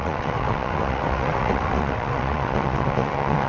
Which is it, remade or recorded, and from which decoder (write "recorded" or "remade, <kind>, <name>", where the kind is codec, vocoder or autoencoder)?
remade, vocoder, WaveNeXt